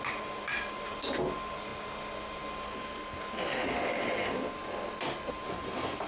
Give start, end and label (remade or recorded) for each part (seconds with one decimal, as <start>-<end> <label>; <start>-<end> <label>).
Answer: 0.0-6.1 recorded